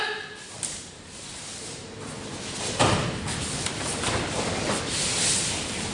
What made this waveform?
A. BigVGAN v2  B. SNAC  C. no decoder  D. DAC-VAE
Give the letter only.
C